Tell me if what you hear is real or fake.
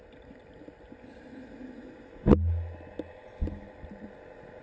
real